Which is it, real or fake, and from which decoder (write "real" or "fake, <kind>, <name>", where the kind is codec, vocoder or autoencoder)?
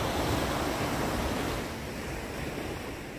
real